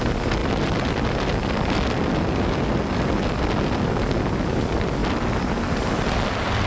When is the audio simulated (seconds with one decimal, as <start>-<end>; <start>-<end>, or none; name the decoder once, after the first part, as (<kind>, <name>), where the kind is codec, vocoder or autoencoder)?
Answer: none